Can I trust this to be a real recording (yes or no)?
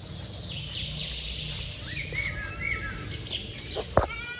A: yes